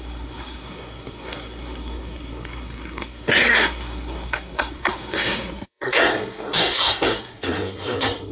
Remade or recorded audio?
remade